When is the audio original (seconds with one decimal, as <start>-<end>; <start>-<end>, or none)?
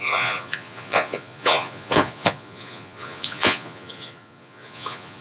none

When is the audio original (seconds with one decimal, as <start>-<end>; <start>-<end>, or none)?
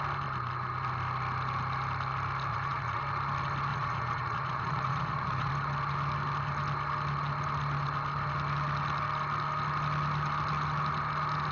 0.0-2.5; 3.0-3.7; 5.5-11.5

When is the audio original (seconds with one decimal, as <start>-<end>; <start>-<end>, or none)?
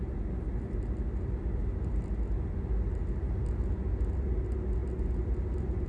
0.0-5.9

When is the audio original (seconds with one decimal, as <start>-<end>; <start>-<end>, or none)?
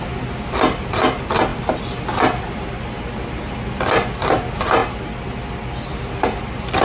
0.0-6.8